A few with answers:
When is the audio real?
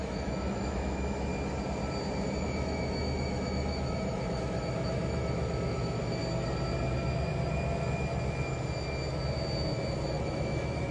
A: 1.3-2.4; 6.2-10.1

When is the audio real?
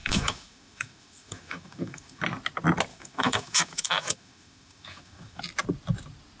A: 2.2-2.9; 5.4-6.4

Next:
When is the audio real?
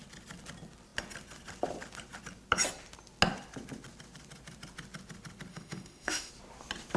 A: 0.0-5.5; 6.3-7.0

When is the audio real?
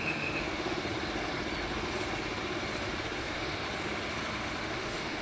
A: 0.8-3.2; 3.6-4.6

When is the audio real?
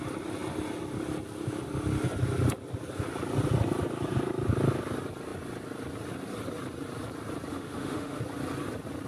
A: 0.0-7.5; 8.2-9.1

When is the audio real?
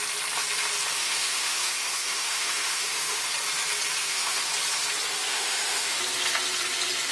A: 0.0-1.0; 3.3-4.0; 4.5-5.3; 6.0-7.1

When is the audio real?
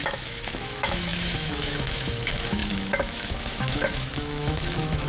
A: none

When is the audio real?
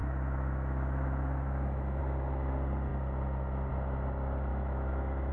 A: 2.0-4.5